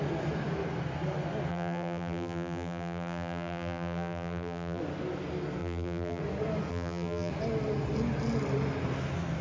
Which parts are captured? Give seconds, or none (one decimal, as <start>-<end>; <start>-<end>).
0.0-1.5; 4.8-5.6; 6.2-6.7; 7.3-9.4